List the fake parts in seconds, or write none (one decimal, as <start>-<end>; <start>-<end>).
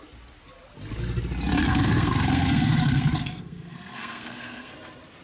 1.6-4.7